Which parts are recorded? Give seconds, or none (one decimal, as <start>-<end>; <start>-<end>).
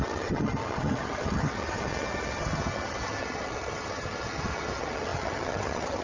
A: none